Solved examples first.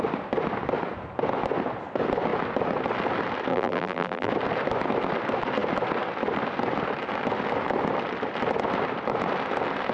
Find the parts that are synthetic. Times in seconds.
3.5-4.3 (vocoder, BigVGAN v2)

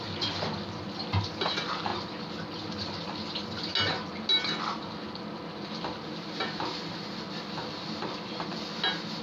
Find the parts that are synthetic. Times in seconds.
none

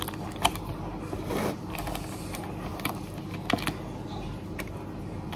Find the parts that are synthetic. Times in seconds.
none

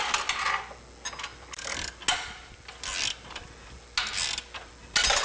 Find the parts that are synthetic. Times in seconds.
none